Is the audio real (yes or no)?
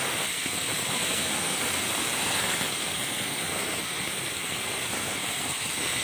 no